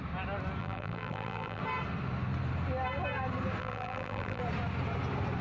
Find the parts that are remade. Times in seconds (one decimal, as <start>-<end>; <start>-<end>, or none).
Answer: 0.6-1.6; 3.6-4.4